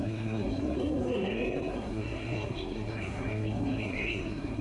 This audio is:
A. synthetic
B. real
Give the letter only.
A